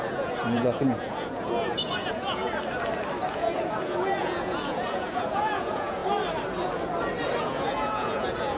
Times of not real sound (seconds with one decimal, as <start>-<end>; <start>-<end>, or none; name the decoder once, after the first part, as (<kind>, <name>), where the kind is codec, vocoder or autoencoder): 0.0-2.4 (vocoder, Vocos); 3.3-6.0; 7.4-8.6